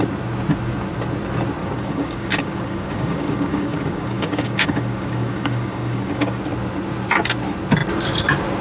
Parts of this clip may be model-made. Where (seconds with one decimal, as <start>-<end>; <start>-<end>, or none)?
1.6-6.4